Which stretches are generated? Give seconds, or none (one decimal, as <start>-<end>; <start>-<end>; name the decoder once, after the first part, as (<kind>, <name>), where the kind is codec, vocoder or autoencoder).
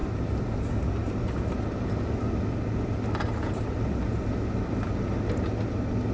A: 0.0-1.9 (vocoder, BigVGAN v2); 3.4-4.3